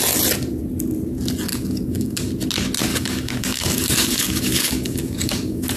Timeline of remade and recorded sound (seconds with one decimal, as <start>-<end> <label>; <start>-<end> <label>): 0.0-1.5 recorded; 1.5-2.3 remade; 2.3-2.9 recorded; 2.9-5.8 remade